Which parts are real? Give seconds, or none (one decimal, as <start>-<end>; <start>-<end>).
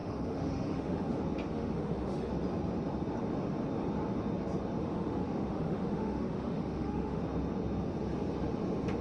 1.1-1.5; 2.3-4.8; 7.2-9.0